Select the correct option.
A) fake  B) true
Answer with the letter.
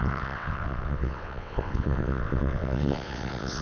A